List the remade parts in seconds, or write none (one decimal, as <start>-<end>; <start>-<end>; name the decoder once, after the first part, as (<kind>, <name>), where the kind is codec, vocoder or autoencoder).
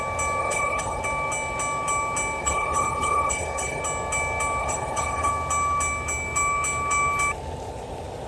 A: 0.4-1.0 (codec, HILCodec); 2.4-3.8; 4.6-5.3